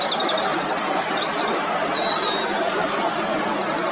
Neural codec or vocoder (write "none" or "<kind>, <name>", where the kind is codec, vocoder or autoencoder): none